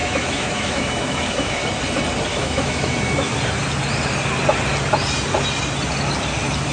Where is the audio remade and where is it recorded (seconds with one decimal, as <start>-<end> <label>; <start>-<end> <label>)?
0.0-1.6 remade; 1.6-2.3 recorded; 2.3-3.3 remade; 3.3-6.7 recorded